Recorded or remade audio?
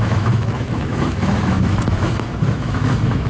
remade